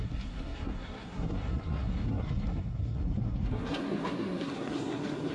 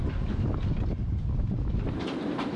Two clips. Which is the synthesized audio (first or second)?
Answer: first